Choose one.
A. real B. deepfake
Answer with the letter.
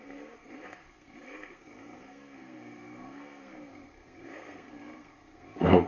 B